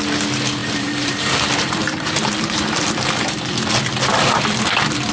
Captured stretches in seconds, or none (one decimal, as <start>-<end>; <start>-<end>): 0.0-0.6; 3.7-5.1